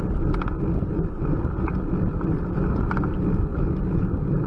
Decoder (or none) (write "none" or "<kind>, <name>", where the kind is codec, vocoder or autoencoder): none